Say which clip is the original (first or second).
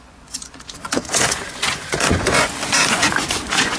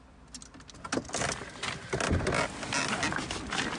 second